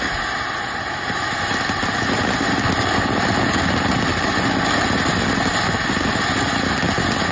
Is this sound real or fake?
real